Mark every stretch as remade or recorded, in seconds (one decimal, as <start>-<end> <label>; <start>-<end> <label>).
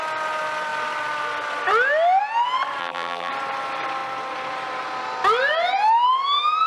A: 0.0-2.8 recorded; 2.8-3.3 remade; 3.3-6.7 recorded